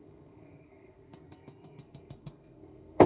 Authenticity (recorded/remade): remade